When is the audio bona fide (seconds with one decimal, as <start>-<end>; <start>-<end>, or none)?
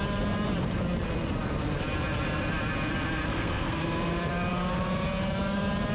0.0-3.3; 3.8-5.9